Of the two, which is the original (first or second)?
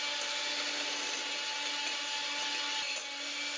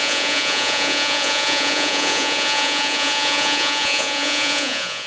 first